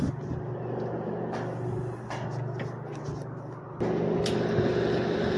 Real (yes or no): yes